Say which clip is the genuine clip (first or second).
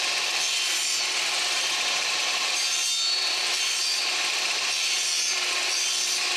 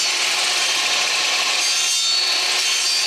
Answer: second